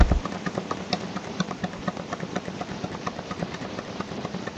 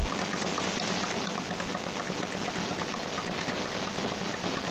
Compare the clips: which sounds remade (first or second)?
first